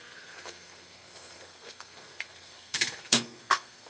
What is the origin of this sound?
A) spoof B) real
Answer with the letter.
A